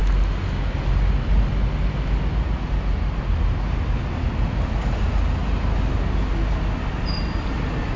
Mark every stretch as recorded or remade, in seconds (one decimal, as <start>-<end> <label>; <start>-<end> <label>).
0.0-4.8 recorded; 4.8-5.4 remade; 5.4-6.3 recorded; 6.3-8.0 remade